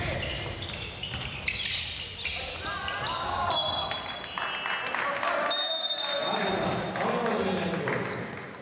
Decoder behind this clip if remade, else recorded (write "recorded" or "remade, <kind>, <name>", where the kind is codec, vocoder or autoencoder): recorded